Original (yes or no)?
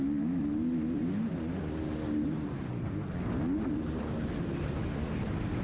yes